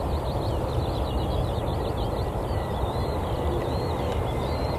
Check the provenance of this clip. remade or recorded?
remade